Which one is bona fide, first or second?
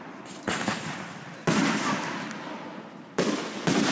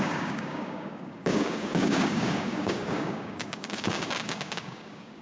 first